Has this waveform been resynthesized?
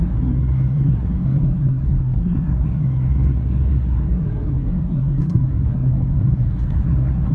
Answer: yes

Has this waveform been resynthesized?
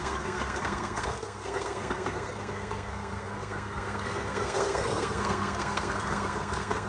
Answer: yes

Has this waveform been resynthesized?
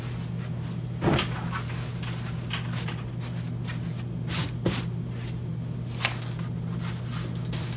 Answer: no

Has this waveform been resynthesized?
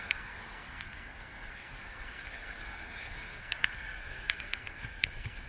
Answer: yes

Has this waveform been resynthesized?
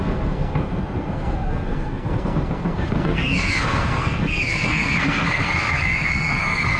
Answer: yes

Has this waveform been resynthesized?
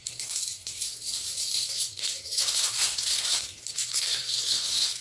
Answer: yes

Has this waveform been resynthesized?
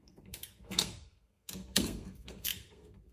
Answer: yes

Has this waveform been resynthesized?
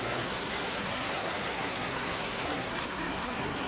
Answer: yes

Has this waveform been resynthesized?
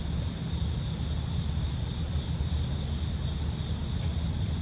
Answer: no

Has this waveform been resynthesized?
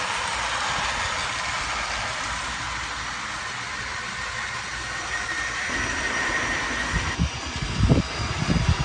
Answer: no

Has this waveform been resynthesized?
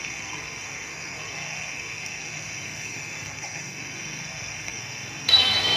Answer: yes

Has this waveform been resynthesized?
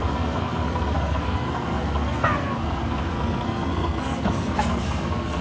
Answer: yes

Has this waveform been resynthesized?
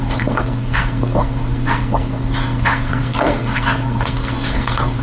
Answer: yes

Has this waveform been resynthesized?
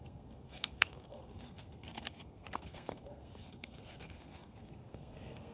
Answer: yes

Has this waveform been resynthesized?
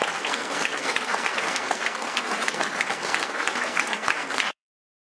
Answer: yes